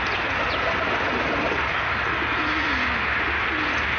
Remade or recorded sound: recorded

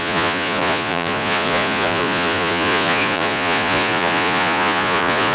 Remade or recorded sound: remade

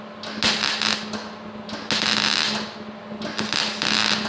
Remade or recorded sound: recorded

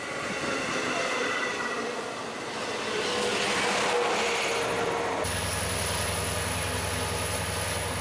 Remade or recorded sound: recorded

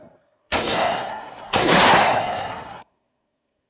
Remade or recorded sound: remade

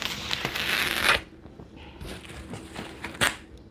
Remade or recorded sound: recorded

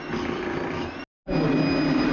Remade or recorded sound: recorded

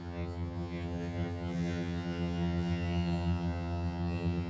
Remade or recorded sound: remade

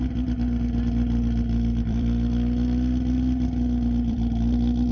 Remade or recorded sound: remade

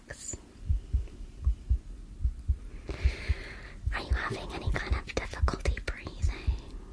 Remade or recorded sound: recorded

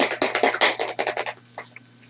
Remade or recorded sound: recorded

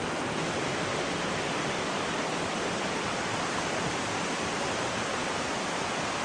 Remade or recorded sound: recorded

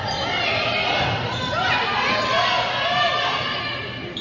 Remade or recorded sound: recorded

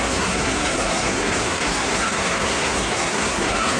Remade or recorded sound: remade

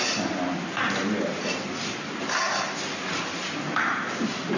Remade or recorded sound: recorded